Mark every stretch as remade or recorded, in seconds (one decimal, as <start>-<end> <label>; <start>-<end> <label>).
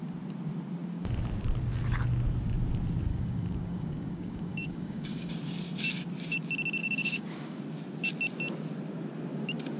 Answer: 0.0-3.1 recorded; 3.1-5.3 remade; 5.3-6.8 recorded; 6.8-7.6 remade; 7.6-9.8 recorded